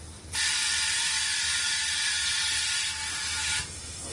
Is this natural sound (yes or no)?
yes